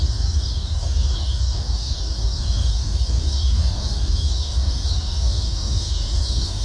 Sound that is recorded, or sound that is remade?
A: remade